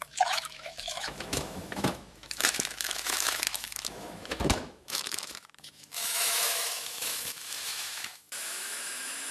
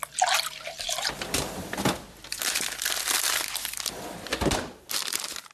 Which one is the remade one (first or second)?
first